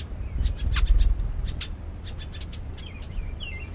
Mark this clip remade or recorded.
recorded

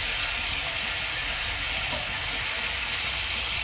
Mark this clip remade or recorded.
recorded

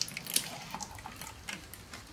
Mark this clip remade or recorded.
recorded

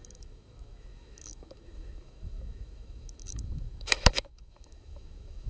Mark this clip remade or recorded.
remade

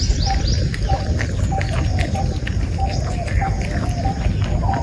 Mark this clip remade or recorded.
recorded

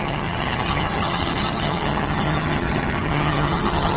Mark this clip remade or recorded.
remade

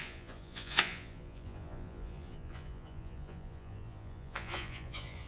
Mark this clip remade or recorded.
remade